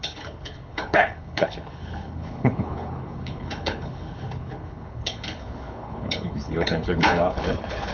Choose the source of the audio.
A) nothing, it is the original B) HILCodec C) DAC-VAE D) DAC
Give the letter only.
B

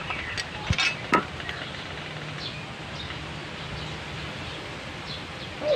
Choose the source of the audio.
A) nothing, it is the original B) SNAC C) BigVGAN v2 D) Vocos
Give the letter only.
A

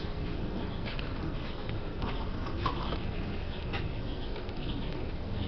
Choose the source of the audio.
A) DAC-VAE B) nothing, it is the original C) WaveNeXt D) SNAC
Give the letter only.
D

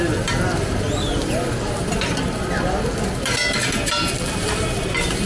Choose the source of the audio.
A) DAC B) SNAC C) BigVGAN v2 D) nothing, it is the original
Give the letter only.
D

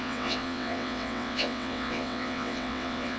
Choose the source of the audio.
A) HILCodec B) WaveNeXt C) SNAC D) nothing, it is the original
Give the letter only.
B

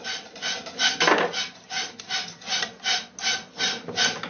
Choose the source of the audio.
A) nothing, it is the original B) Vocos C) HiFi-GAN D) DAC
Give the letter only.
A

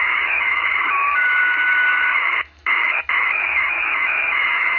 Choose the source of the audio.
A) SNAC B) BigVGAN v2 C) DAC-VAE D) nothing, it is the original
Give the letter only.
C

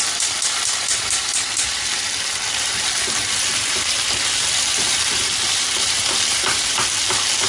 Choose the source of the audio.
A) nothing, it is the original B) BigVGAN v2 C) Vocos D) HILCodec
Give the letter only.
B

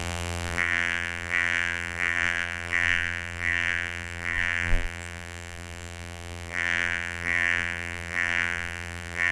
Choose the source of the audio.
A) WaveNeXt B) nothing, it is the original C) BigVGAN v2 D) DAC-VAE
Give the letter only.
C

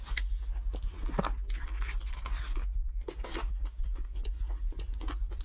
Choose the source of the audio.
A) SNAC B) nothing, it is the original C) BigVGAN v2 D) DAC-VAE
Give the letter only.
B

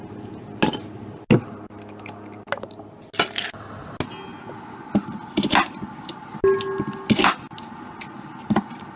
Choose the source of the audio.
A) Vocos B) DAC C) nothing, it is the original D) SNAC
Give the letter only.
C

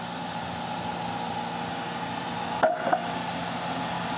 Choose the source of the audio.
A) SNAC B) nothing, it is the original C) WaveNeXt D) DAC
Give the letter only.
B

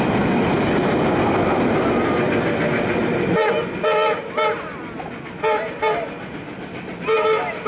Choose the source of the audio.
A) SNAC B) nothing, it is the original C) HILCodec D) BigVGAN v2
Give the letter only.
B